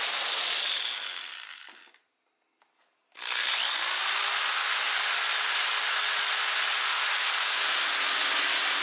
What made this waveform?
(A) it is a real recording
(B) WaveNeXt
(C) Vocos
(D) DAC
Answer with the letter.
A